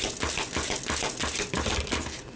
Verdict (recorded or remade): recorded